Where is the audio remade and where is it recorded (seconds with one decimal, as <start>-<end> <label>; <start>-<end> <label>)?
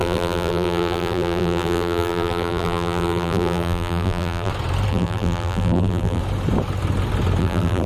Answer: 0.0-4.5 remade; 4.5-4.9 recorded; 4.9-6.2 remade; 6.2-7.4 recorded; 7.4-7.9 remade